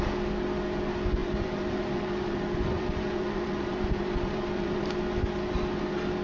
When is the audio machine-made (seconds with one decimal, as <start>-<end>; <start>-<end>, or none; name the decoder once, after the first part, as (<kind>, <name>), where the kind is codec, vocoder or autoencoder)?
1.2-4.9 (vocoder, BigVGAN v2)